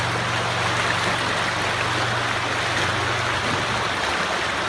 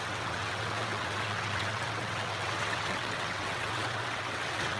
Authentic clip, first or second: first